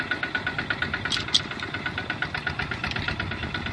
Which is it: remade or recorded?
recorded